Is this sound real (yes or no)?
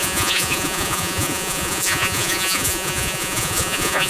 no